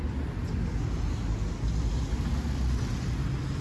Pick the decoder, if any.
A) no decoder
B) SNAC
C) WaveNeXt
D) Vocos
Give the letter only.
A